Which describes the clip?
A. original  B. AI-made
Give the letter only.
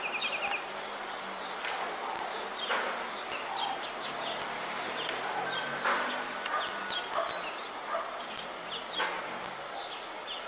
A